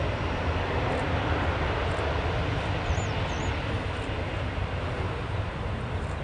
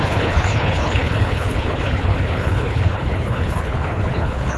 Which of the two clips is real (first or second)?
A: first